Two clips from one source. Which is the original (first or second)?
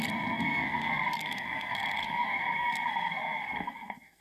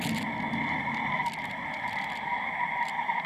second